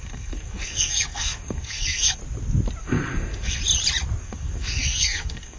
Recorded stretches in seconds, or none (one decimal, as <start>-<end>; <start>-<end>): 2.2-2.8; 3.6-4.2